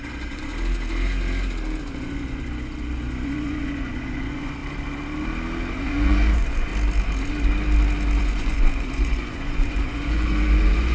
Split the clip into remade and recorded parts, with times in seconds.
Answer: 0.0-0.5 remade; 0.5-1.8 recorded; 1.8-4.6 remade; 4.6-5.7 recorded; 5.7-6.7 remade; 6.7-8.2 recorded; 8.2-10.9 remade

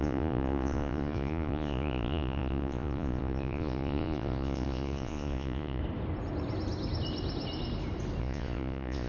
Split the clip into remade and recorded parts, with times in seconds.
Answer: 0.0-5.8 remade; 5.8-8.2 recorded; 8.2-9.1 remade